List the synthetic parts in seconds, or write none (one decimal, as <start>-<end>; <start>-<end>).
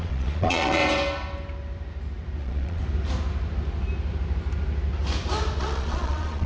0.0-0.8; 2.4-2.8; 5.6-6.5